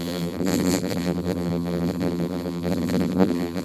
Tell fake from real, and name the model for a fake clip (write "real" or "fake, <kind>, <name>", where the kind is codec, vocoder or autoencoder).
fake, vocoder, BigVGAN v2